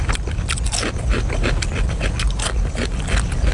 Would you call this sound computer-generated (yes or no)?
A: no